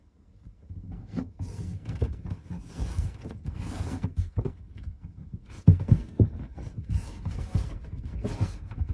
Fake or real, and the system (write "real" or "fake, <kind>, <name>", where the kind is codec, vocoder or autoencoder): fake, codec, SNAC